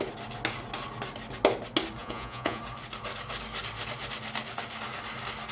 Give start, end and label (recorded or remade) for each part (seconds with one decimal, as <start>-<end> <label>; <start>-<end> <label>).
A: 0.0-2.0 recorded; 2.0-2.6 remade; 2.6-5.5 recorded